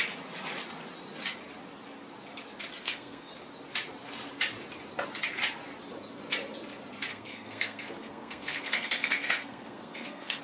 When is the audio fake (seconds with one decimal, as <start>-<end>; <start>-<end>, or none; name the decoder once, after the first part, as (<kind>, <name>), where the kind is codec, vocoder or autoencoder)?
2.8-3.3 (codec, SNAC); 7.1-10.4